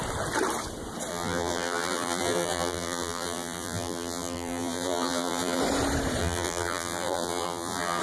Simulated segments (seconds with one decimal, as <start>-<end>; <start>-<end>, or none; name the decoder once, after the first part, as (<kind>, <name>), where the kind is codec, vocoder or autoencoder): 1.1-5.6 (vocoder, BigVGAN v2); 6.2-8.0